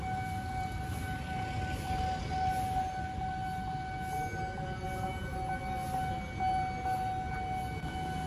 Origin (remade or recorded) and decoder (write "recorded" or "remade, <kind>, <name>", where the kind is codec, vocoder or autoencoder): recorded